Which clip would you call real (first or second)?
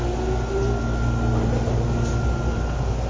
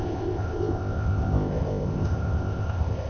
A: first